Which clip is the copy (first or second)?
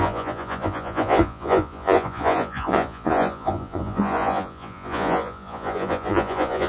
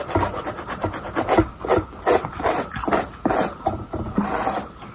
first